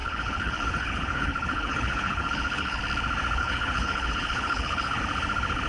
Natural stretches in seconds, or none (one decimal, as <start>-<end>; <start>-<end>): 2.8-3.4; 5.0-5.7